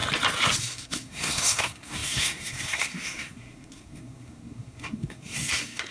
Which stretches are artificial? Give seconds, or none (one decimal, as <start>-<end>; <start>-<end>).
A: 0.6-5.9

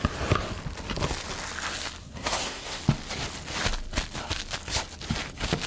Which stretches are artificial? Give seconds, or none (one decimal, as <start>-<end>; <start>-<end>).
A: 2.0-2.8

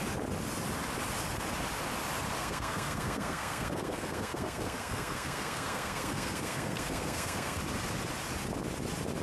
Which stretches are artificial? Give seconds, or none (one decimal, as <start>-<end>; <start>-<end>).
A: 2.4-7.6

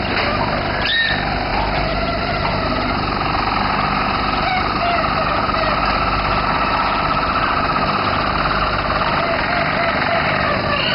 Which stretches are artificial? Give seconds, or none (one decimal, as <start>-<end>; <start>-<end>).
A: none

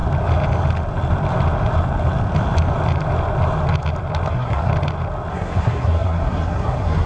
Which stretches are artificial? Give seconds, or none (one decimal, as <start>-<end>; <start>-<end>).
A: 4.3-4.7; 5.3-7.1

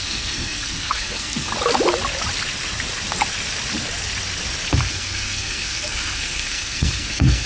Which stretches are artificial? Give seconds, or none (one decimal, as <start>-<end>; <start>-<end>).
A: 0.0-1.5; 4.9-7.5